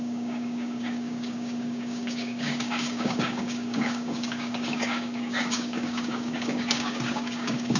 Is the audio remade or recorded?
remade